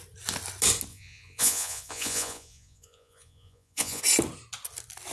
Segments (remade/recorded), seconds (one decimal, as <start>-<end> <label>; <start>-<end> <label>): 0.0-0.9 recorded; 0.9-4.0 remade; 4.0-5.1 recorded